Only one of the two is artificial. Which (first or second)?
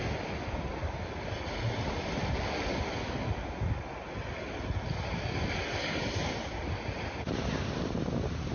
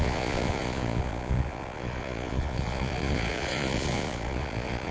second